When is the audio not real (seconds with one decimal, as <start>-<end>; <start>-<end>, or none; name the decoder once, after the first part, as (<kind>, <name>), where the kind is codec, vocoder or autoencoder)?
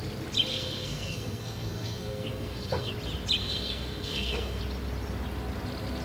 0.5-2.9 (codec, SNAC); 3.4-4.6